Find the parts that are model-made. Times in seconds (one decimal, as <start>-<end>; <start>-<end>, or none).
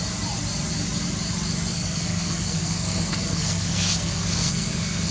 1.7-5.1